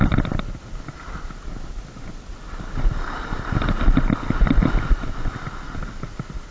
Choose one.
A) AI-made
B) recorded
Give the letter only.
B